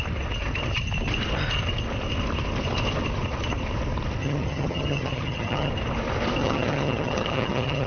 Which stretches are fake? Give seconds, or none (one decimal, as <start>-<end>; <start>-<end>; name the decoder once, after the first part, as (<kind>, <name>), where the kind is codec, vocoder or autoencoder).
4.2-5.7 (vocoder, HiFi-GAN); 6.4-7.9